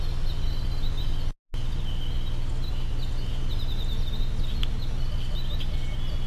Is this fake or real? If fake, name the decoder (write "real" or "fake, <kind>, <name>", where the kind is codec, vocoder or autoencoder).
real